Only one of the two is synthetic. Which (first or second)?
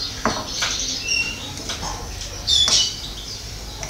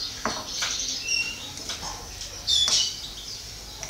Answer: second